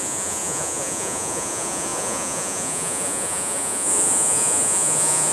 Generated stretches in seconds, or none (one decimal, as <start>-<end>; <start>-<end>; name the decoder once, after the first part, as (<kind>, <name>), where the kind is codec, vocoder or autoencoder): 0.0-5.3 (vocoder, Vocos)